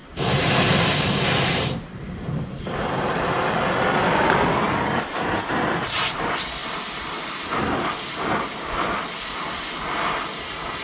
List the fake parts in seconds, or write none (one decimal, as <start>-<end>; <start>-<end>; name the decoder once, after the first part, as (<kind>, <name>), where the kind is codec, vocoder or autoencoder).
0.0-3.5 (vocoder, BigVGAN v2); 6.6-7.3